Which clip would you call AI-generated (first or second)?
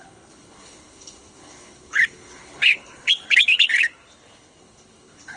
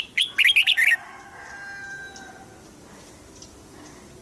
first